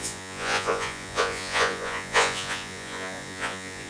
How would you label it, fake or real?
fake